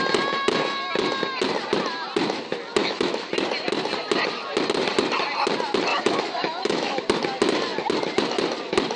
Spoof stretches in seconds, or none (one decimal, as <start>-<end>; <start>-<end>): 2.8-3.3; 5.9-7.0